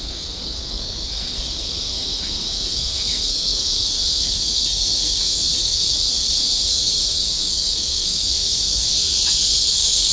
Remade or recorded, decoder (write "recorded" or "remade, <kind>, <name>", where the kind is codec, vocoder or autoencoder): remade, codec, SNAC